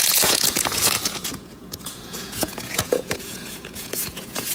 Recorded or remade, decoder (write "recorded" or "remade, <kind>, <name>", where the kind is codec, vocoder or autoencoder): remade, vocoder, Vocos